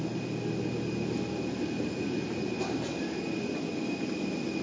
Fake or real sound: real